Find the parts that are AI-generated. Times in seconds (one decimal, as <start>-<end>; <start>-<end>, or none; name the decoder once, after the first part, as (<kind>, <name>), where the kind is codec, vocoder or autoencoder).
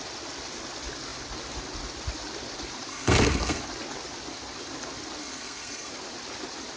2.9-3.6 (codec, SNAC); 5.2-5.9